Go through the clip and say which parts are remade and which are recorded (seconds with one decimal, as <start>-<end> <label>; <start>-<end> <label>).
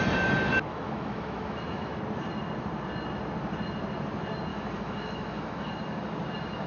0.0-0.7 recorded; 0.7-2.0 remade; 2.0-4.5 recorded; 4.5-5.7 remade; 5.7-6.7 recorded